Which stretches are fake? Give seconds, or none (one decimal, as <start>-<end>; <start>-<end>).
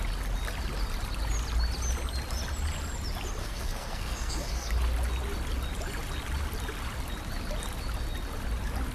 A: 3.4-4.7